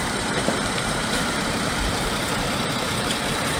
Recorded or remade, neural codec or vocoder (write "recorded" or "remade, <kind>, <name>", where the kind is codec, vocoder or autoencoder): remade, vocoder, BigVGAN v2